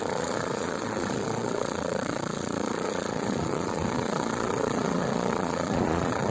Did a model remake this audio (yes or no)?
yes